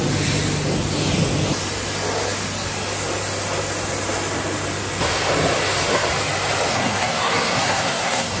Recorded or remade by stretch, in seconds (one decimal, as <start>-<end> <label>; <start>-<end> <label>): 0.0-6.7 recorded; 6.7-8.4 remade